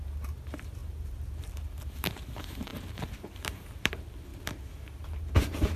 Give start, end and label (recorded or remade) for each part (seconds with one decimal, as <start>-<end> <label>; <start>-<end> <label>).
0.0-4.3 remade; 4.3-4.8 recorded; 4.8-5.8 remade